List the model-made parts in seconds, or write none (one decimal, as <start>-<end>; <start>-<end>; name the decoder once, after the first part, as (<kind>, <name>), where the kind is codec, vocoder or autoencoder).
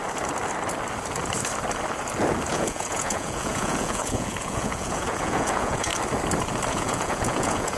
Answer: 2.5-5.9 (vocoder, Vocos); 6.7-7.8